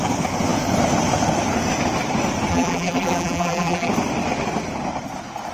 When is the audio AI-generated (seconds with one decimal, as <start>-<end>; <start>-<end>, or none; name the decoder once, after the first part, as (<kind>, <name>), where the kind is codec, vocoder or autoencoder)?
2.5-3.9 (vocoder, BigVGAN v2)